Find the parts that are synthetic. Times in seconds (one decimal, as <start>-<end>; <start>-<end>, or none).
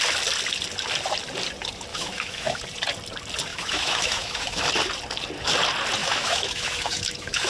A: 1.9-2.6; 3.5-4.7; 6.0-7.5